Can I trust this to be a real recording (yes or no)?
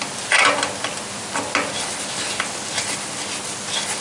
yes